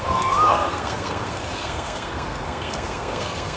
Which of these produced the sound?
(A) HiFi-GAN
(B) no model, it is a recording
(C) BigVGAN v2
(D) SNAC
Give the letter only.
D